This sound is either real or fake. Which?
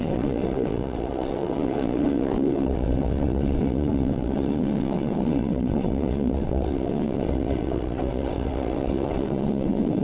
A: fake